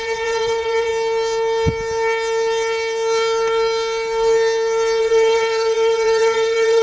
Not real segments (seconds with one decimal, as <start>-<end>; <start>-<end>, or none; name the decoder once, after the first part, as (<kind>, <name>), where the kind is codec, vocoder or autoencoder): 0.0-0.9 (vocoder, WaveNeXt); 5.0-6.8